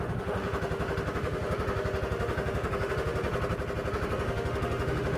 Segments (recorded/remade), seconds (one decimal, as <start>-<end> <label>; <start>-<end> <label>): 0.0-3.3 remade; 3.3-3.9 recorded; 3.9-5.2 remade